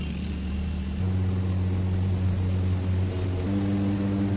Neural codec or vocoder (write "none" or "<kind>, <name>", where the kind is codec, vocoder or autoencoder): none